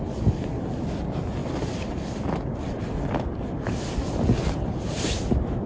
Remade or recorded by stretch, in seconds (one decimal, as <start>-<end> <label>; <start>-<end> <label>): 0.0-5.7 recorded